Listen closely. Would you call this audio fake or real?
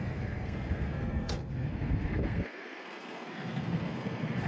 fake